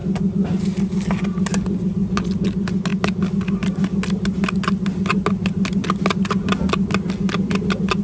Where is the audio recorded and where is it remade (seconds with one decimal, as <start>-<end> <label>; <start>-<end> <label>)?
0.0-8.0 recorded